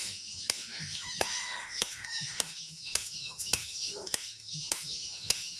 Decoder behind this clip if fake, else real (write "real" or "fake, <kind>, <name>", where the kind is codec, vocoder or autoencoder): fake, autoencoder, DAC-VAE